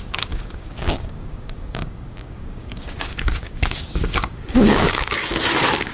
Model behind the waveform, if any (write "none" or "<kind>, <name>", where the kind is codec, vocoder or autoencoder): codec, DAC